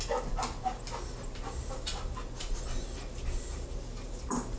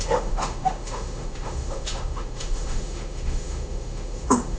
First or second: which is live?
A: first